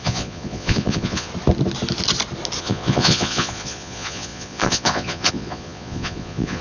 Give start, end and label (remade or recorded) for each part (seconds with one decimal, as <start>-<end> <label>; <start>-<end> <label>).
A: 0.0-1.3 remade; 1.3-2.6 recorded; 2.6-6.6 remade